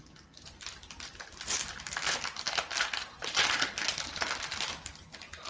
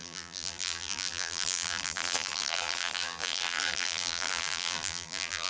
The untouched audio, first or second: first